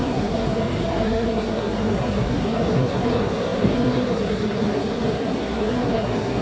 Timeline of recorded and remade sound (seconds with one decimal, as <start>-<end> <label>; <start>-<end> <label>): 0.0-6.4 remade